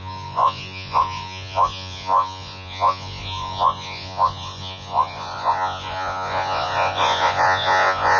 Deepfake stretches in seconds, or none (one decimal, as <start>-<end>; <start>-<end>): 0.0-8.2